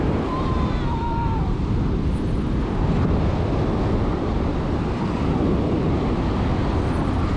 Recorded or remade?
recorded